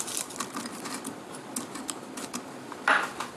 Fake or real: real